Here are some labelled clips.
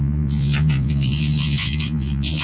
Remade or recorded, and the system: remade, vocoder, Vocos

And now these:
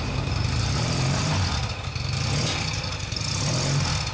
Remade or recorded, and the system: recorded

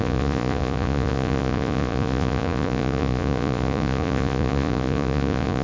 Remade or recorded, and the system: remade, vocoder, Vocos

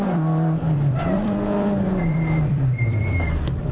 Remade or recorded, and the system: remade, vocoder, BigVGAN v2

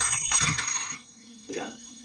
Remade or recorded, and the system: remade, codec, SNAC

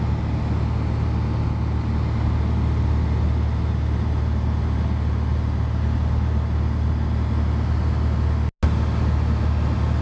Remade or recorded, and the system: recorded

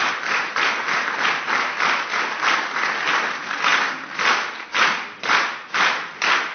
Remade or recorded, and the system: recorded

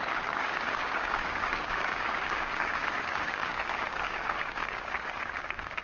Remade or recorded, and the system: remade, codec, DAC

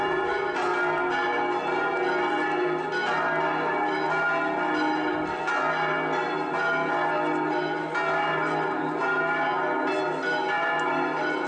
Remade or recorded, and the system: recorded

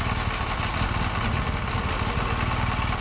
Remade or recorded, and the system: recorded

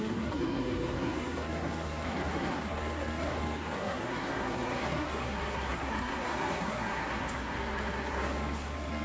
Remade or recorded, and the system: remade, codec, SNAC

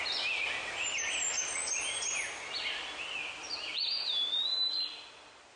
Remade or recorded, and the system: recorded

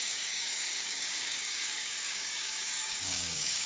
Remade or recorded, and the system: remade, codec, DAC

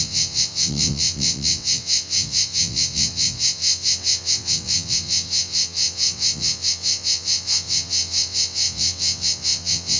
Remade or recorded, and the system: remade, vocoder, WaveNeXt